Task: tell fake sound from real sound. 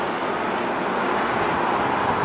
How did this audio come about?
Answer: real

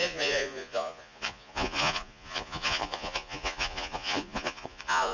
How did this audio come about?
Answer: fake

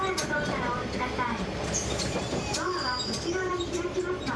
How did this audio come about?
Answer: fake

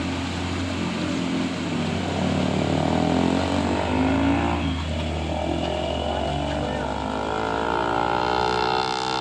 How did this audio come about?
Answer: real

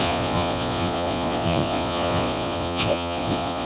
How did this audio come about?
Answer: fake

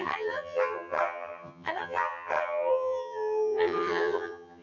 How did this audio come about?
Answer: fake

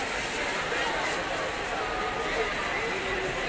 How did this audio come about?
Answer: real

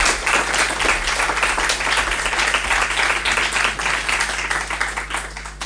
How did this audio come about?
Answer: real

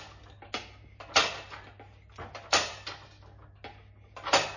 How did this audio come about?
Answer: real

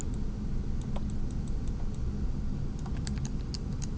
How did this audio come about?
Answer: real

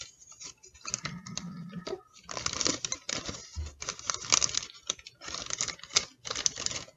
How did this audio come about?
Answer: real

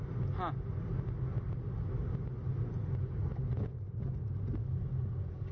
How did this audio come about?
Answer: real